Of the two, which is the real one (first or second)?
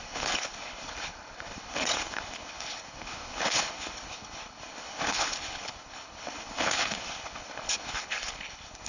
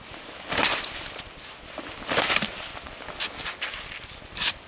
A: second